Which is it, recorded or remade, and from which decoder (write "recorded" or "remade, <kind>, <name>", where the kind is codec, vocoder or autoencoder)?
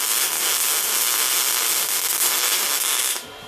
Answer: recorded